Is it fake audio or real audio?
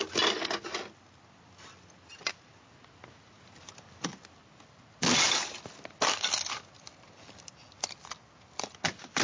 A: real